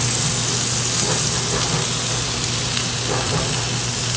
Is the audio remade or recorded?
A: recorded